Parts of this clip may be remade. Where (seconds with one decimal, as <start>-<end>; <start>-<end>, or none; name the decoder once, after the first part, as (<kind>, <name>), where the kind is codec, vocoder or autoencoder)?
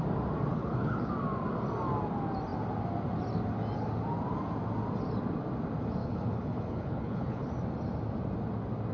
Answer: 0.5-1.1 (codec, HILCodec); 6.0-7.5